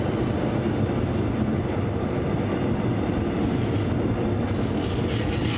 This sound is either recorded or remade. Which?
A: recorded